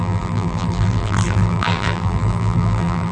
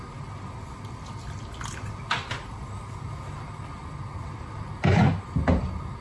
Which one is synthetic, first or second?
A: first